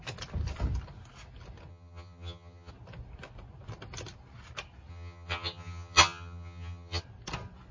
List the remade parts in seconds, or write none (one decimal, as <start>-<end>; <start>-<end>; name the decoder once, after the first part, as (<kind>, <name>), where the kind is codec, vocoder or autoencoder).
1.7-2.7 (vocoder, HiFi-GAN); 4.9-7.0